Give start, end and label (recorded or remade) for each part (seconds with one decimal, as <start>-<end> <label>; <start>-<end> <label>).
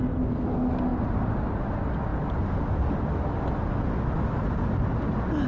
0.0-5.5 recorded